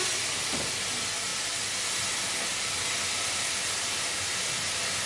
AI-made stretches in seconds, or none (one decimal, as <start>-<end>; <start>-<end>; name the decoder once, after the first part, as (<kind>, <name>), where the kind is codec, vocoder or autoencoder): none